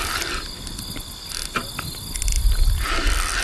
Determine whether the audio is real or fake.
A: real